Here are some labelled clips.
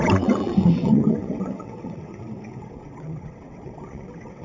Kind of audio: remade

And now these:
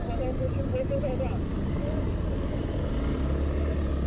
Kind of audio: recorded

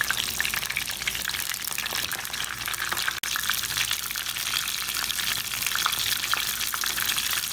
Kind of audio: recorded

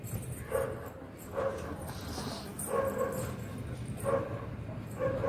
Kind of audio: recorded